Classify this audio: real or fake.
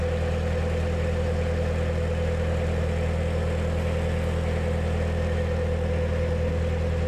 real